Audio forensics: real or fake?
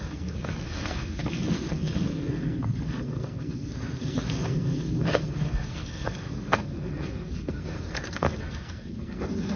fake